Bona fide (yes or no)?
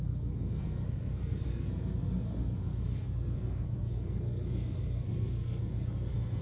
no